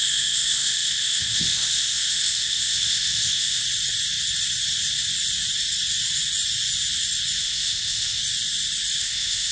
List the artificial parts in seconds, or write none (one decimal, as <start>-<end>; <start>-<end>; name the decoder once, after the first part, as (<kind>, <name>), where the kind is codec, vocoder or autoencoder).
0.0-3.6 (codec, ZipCodec); 7.4-8.2; 9.0-9.5